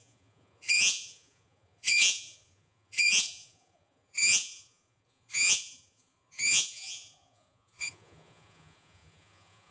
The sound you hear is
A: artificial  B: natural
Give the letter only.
A